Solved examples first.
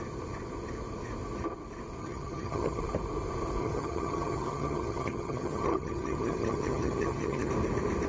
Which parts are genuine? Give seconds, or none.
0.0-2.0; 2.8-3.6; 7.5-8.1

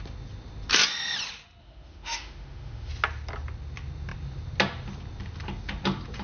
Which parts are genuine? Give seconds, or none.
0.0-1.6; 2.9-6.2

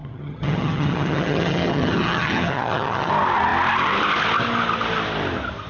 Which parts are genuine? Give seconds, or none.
3.1-5.7

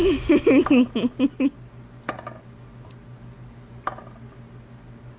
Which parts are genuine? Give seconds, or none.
0.0-5.2

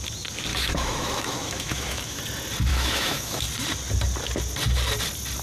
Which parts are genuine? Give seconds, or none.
0.0-0.5; 2.2-2.7; 3.4-5.4

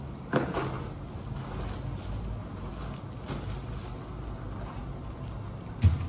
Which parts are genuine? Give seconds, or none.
0.0-6.1